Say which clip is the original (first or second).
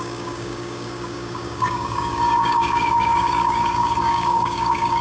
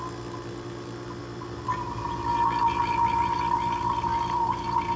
second